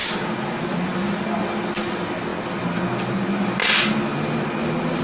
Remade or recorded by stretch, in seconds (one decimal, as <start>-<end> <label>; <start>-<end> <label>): 0.0-5.0 recorded